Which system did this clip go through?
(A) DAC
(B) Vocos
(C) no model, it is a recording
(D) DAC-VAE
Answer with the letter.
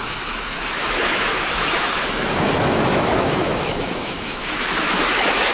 D